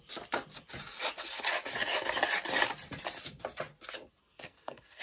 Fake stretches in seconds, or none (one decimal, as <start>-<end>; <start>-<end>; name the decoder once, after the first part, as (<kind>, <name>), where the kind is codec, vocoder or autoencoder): 4.2-5.0 (codec, SNAC)